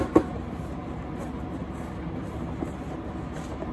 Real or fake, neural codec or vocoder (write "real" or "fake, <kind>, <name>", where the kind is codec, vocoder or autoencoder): real